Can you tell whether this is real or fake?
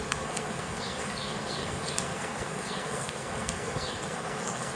fake